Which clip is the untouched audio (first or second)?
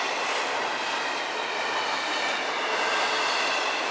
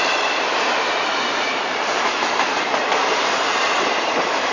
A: first